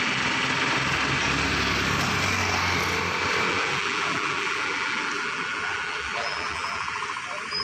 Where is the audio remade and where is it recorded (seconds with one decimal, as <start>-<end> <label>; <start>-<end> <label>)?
0.0-3.5 recorded; 3.5-7.0 remade; 7.0-7.6 recorded